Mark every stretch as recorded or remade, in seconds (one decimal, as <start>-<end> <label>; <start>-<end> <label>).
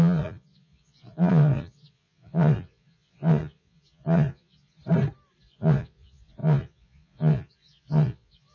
0.0-4.8 remade; 4.8-5.4 recorded; 5.4-8.5 remade